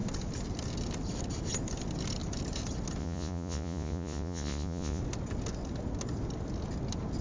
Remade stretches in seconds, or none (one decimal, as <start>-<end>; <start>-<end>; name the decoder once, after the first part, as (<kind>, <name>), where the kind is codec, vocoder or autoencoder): 3.0-5.0 (vocoder, Vocos)